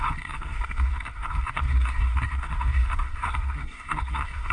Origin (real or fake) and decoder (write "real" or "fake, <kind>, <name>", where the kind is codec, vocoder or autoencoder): fake, codec, SNAC